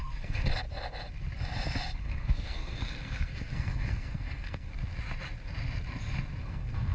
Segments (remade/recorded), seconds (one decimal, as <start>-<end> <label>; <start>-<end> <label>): 0.0-0.5 remade; 0.5-2.0 recorded; 2.0-4.7 remade; 4.7-6.4 recorded; 6.4-6.9 remade